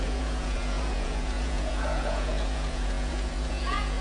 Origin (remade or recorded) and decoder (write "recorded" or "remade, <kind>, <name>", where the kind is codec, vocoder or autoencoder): remade, vocoder, Vocos